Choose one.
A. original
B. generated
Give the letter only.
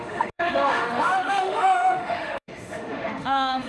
B